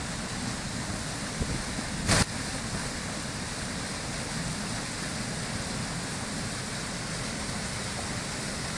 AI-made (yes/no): no